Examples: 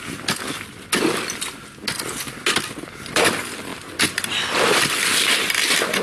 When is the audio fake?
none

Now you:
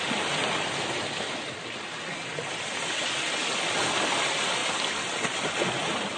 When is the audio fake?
none

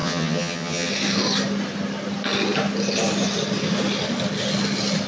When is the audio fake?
0.0-0.9 (vocoder, HiFi-GAN)

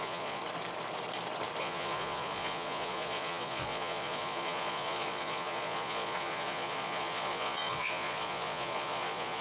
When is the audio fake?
0.0-0.4 (vocoder, Vocos); 1.6-9.4

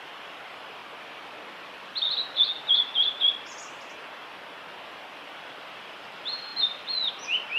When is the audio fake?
0.0-0.8 (vocoder, BigVGAN v2); 5.4-7.6

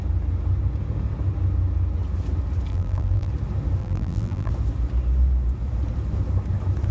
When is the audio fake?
2.7-3.3 (vocoder, BigVGAN v2); 3.8-4.5

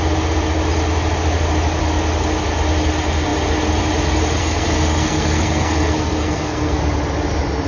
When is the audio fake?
4.4-6.8 (codec, SNAC)

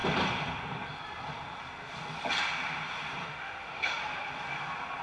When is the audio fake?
3.2-4.0 (autoencoder, DAC-VAE)